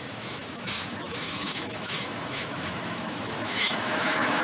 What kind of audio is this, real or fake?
fake